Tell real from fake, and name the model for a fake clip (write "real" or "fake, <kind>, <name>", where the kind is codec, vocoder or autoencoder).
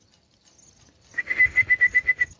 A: real